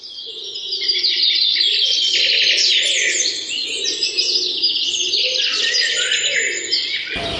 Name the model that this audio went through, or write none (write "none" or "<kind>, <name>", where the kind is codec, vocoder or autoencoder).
none